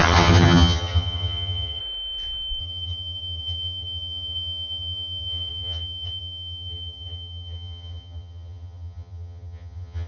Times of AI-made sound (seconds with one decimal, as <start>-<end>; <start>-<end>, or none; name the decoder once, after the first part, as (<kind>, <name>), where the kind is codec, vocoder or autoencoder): 0.0-1.8 (vocoder, HiFi-GAN); 2.6-10.1